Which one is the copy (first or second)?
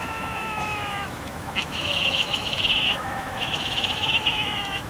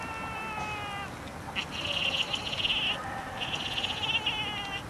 first